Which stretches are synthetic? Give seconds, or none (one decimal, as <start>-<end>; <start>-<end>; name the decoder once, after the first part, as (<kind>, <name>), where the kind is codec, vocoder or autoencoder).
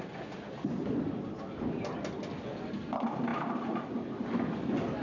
none